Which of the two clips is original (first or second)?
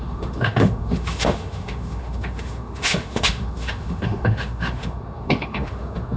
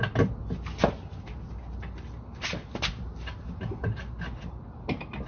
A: second